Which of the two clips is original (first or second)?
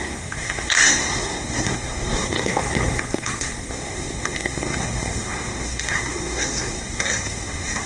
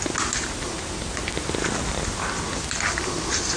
second